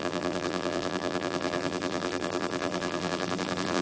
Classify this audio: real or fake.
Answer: fake